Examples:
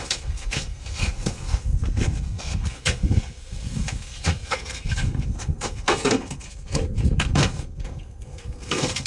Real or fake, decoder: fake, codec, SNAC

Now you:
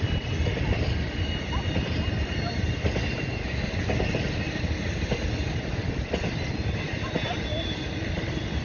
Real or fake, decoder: real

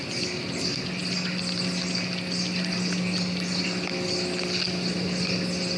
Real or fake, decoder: real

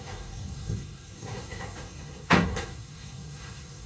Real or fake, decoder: fake, codec, SNAC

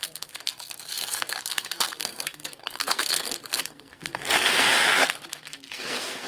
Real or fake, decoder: fake, codec, SNAC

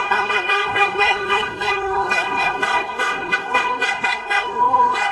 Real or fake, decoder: fake, codec, SNAC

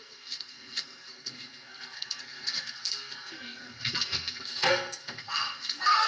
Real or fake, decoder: fake, codec, SNAC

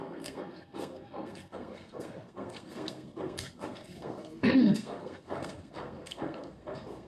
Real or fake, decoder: fake, codec, SNAC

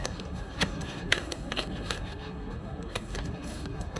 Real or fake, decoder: fake, codec, SNAC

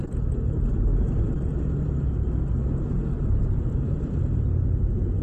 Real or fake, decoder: real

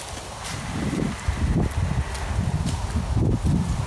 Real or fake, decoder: real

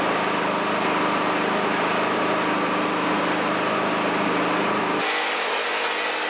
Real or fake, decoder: real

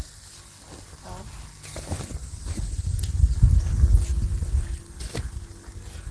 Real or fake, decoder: real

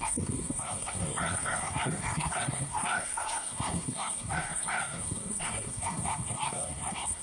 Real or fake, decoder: fake, codec, SNAC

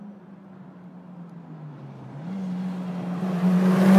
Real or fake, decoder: real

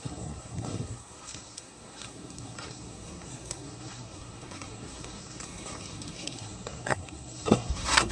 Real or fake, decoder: fake, codec, SNAC